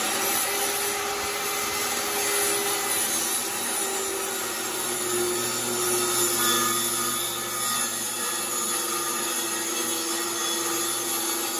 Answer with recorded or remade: recorded